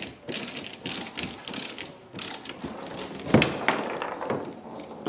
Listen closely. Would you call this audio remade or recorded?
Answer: recorded